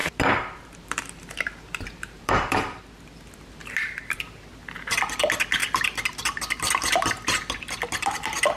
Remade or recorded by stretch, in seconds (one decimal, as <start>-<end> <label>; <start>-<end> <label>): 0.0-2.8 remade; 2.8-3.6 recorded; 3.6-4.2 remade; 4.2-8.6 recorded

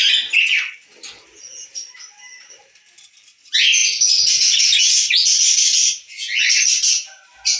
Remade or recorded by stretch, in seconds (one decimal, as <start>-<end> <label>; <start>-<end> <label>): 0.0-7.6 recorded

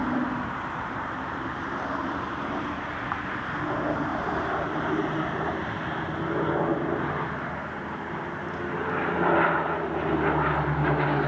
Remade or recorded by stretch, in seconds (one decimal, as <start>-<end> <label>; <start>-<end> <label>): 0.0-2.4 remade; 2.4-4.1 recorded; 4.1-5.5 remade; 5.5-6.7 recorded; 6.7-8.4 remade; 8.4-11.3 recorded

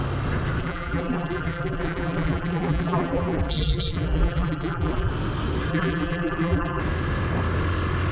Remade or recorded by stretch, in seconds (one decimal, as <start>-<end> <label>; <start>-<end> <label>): 0.0-0.6 recorded; 0.6-5.1 remade; 5.1-5.7 recorded; 5.7-6.8 remade; 6.8-8.1 recorded

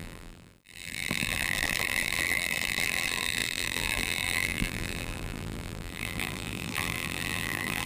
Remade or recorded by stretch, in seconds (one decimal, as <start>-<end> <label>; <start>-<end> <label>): 0.0-7.9 remade